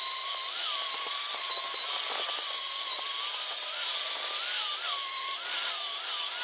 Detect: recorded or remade recorded